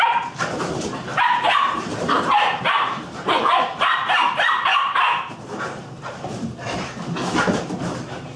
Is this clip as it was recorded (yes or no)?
no